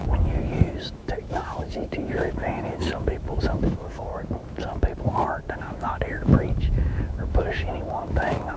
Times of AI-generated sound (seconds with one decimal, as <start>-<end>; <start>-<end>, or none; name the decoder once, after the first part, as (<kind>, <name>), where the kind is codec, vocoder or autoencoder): 0.0-4.1 (autoencoder, DAC-VAE); 5.5-8.6